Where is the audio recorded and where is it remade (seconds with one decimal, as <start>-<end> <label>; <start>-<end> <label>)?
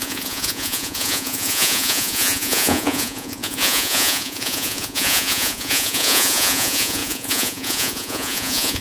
0.0-8.8 remade